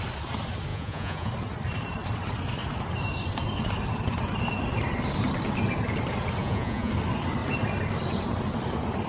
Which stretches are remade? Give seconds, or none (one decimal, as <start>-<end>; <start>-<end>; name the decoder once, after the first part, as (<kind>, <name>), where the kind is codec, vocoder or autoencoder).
0.7-1.3 (vocoder, Vocos); 6.4-6.9